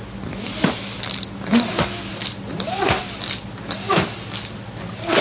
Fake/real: real